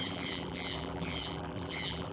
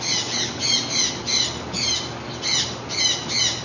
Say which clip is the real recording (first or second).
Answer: second